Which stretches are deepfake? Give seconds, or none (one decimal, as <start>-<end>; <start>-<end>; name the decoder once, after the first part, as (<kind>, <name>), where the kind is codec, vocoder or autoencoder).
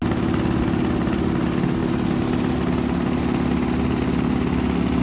none